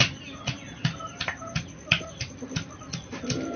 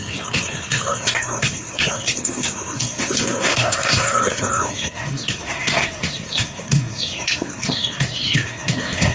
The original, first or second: first